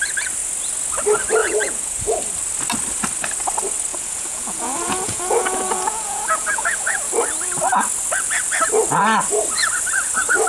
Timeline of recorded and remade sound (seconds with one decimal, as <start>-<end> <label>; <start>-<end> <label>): 0.0-1.4 recorded; 1.4-2.2 remade; 2.2-3.9 recorded; 3.9-7.1 remade; 7.1-10.5 recorded